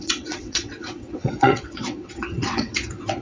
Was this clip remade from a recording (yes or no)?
yes